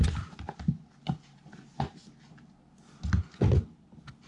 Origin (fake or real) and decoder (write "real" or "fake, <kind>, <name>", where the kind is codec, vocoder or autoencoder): real